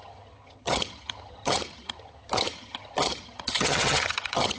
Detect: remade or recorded remade